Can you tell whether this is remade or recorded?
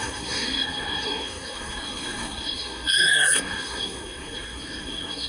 remade